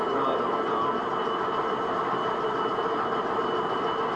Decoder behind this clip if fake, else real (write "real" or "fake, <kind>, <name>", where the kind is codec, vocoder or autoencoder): real